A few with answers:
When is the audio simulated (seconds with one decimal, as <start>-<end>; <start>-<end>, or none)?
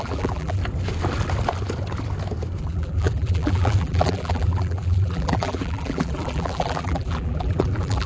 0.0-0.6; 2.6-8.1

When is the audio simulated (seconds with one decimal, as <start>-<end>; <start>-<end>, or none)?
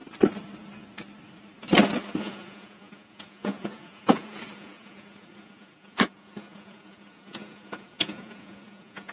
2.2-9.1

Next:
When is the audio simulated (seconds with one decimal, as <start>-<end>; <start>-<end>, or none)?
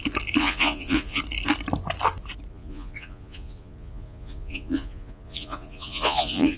0.4-1.2; 2.5-6.6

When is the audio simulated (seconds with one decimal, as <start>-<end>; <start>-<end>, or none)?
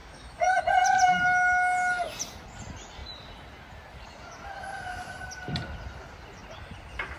0.0-0.6